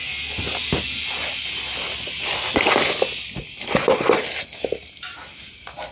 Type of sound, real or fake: real